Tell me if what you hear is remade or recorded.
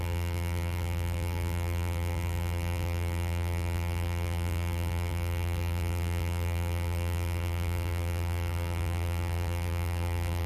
remade